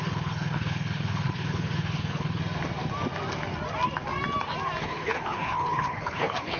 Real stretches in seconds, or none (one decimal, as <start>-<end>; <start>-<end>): 2.4-4.8